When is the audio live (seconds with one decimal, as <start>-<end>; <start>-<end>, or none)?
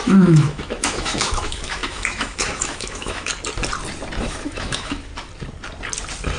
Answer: 3.3-4.2; 5.1-6.4